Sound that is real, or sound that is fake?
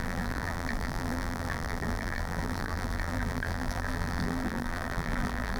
fake